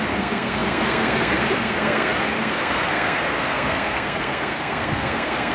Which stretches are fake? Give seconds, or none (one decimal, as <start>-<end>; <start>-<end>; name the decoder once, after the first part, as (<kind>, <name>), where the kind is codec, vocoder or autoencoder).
0.0-5.5 (codec, SNAC)

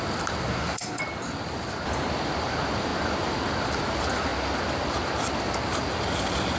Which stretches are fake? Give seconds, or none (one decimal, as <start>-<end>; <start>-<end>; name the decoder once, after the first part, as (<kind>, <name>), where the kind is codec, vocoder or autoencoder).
0.4-1.0 (codec, SNAC)

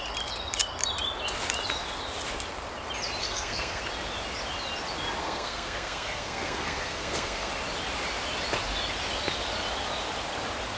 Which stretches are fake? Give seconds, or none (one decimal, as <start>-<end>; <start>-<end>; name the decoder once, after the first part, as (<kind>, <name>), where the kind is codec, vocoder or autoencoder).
3.2-3.8 (codec, SNAC); 5.2-7.5

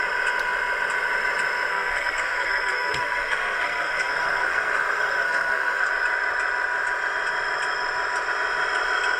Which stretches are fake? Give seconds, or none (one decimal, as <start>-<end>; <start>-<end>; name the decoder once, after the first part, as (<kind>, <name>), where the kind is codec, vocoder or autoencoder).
1.7-5.9 (codec, SNAC)

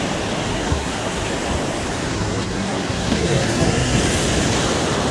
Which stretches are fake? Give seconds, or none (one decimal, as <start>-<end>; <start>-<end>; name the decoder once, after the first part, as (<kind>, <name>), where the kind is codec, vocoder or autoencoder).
0.5-1.3 (codec, SNAC); 2.1-4.0

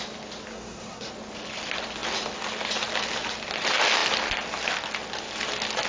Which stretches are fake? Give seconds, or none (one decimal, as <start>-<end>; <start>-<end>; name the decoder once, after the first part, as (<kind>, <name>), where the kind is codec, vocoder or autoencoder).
0.5-1.1 (codec, SNAC)

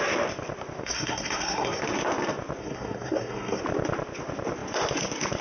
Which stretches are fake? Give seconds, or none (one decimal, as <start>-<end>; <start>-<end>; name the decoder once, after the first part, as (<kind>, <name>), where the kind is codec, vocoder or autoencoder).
0.8-1.8 (codec, SNAC); 2.6-3.6

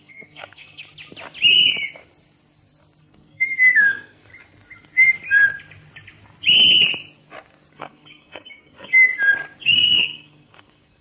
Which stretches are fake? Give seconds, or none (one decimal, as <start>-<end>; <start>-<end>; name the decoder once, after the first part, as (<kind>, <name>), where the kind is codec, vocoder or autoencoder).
0.0-0.8 (codec, SNAC); 3.0-4.3; 7.7-9.1; 9.6-11.0